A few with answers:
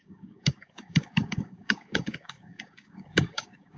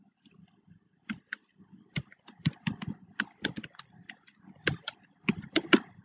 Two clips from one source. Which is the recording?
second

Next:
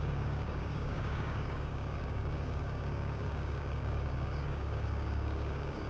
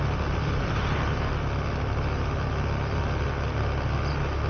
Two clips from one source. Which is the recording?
second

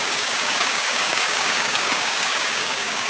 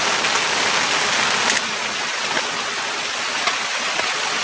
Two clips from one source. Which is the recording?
second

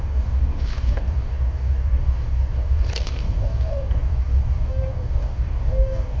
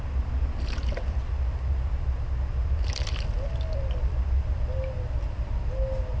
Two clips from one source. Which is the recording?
second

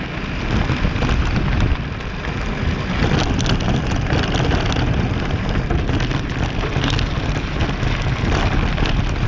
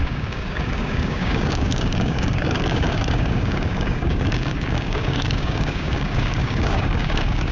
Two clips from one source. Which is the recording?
first